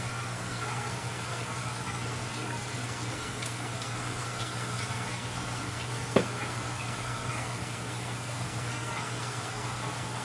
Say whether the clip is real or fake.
fake